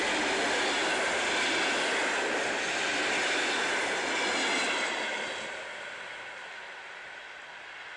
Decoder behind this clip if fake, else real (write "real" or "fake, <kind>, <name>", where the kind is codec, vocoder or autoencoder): real